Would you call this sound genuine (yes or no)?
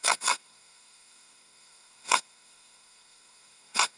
no